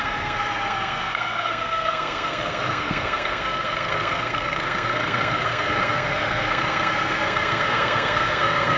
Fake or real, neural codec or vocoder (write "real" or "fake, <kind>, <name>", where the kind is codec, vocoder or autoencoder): fake, codec, SNAC